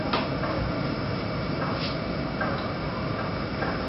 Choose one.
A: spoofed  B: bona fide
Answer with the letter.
B